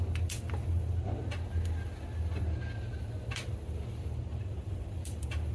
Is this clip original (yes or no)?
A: yes